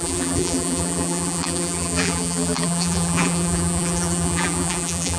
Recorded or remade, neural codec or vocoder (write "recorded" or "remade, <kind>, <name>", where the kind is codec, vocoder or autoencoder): remade, vocoder, BigVGAN v2